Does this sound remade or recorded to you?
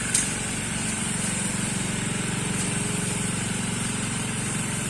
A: remade